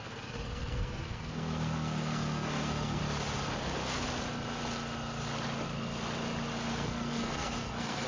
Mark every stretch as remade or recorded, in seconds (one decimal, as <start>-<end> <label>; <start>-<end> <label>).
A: 0.0-3.0 remade; 3.0-6.7 recorded; 6.7-8.1 remade